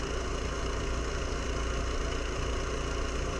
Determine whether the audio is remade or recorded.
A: recorded